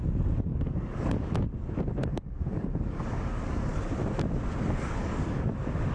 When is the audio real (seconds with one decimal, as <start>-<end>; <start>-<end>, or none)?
0.0-0.5; 1.4-2.0; 3.8-5.0; 5.5-5.9